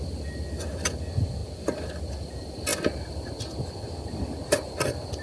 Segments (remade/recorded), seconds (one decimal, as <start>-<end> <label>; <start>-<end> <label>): 0.0-5.2 recorded